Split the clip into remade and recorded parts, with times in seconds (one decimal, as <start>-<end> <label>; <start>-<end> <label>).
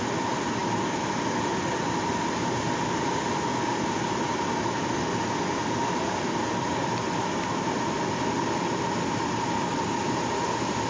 0.0-10.9 recorded